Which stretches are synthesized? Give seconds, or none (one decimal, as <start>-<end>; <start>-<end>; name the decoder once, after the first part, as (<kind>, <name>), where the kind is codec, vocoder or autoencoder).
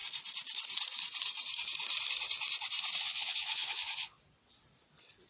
3.0-4.2 (vocoder, Vocos)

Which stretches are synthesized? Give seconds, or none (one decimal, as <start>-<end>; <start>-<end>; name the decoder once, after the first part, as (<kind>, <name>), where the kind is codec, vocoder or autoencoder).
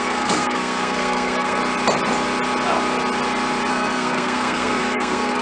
0.0-1.6 (codec, SNAC); 3.7-5.4